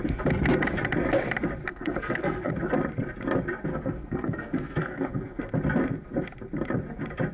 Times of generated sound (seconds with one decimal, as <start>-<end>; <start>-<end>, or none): 1.7-2.5; 3.7-5.4